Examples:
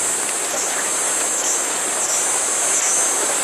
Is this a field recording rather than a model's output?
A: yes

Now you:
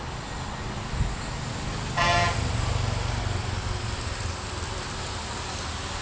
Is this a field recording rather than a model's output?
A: yes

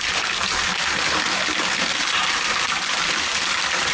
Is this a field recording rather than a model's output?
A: yes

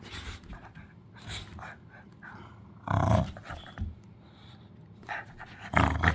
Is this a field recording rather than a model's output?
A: yes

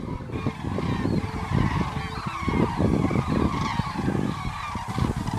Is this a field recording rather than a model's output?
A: yes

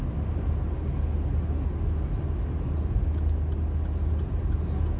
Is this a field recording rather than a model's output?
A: yes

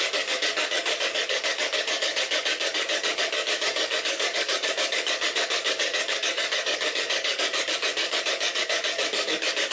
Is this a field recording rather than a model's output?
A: no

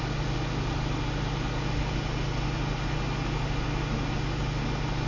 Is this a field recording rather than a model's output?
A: yes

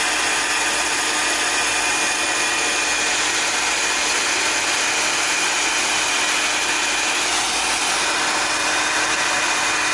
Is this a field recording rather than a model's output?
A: yes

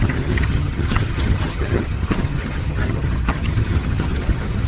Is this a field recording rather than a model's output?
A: no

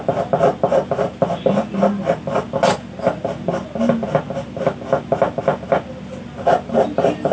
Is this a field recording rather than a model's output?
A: yes